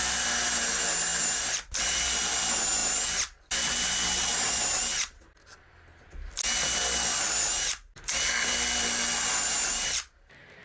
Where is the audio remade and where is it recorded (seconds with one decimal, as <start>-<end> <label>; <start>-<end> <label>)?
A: 0.0-10.6 recorded